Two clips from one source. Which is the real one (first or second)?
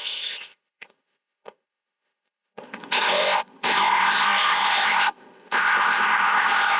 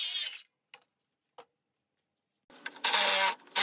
second